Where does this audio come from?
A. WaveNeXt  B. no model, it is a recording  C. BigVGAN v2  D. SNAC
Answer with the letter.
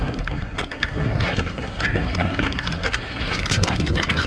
D